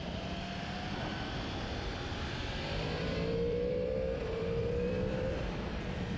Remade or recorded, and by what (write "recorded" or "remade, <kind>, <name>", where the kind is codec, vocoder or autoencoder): remade, vocoder, BigVGAN v2